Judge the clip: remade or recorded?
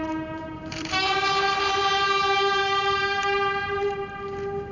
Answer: remade